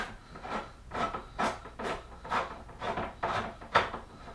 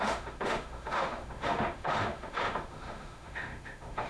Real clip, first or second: first